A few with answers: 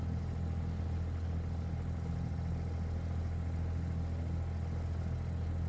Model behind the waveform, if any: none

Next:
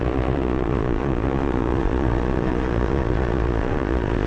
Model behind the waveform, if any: vocoder, Vocos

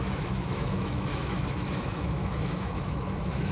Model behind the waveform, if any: autoencoder, DAC-VAE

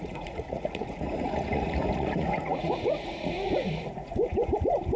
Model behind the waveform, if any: vocoder, Vocos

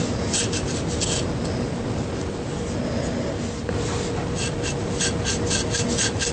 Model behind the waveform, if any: none